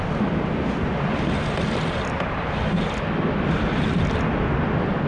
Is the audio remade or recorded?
recorded